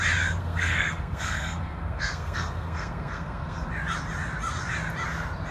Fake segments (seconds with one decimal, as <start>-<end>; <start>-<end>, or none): 0.4-3.7